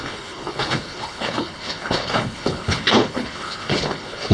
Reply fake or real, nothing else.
fake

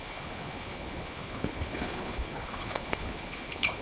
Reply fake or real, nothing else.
fake